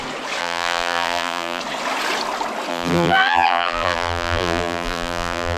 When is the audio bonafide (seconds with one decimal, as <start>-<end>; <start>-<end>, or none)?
0.0-0.4; 1.6-2.7